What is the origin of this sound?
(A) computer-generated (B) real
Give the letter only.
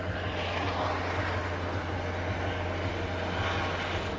B